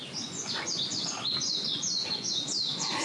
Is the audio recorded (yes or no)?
no